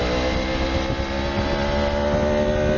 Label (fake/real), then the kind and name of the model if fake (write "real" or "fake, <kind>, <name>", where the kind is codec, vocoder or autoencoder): real